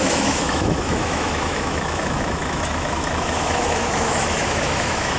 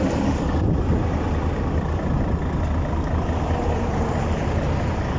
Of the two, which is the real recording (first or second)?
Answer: second